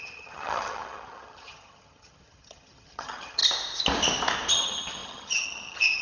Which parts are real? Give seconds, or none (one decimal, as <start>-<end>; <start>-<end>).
3.4-4.5

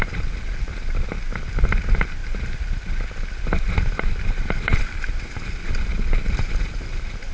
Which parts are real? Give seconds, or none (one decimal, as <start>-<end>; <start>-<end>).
0.0-7.3

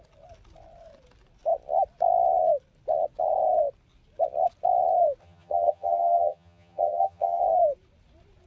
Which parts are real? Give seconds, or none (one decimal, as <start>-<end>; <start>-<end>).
0.0-5.2; 7.4-8.5